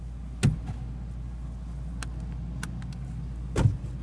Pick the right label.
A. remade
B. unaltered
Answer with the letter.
B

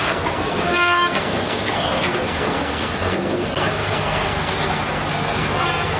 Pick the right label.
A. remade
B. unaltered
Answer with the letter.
A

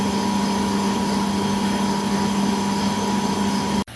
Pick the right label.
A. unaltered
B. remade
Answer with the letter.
A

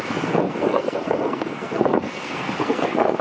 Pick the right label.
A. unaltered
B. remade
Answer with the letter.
B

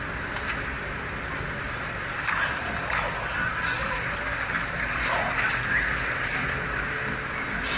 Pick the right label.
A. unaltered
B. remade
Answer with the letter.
A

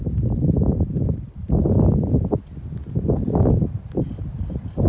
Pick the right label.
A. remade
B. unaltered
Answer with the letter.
B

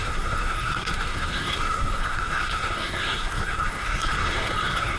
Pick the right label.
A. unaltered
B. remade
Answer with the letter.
B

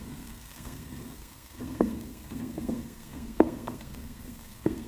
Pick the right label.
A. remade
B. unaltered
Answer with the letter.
A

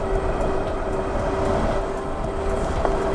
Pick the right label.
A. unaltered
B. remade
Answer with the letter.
A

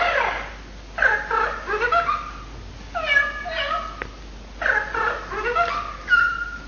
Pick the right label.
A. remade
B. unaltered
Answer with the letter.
B